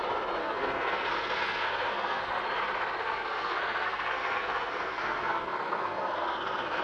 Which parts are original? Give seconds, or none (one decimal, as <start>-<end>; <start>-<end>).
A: 0.0-0.4; 2.4-3.0